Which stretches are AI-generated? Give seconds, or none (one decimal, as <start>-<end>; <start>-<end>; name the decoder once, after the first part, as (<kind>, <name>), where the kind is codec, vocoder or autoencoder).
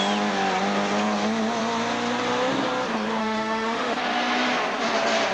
3.2-4.0 (autoencoder, DAC-VAE)